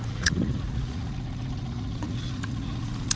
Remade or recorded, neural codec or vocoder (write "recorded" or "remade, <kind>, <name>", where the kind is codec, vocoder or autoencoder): remade, vocoder, Vocos